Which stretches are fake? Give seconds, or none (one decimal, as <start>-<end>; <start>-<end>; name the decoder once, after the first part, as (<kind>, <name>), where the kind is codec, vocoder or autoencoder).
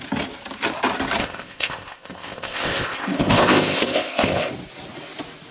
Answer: 1.2-4.5 (codec, ZipCodec)